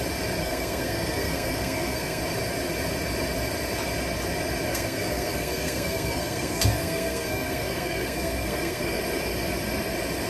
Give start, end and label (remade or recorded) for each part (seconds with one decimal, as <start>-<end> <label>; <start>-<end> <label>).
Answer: 0.0-0.4 recorded; 0.4-2.2 remade; 2.2-4.7 recorded; 4.7-9.0 remade; 9.0-10.3 recorded